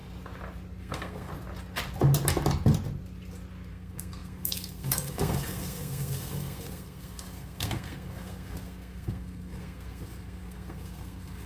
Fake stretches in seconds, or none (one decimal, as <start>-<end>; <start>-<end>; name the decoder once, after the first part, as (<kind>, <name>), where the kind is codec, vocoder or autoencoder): 0.8-1.3 (codec, SNAC); 3.7-11.5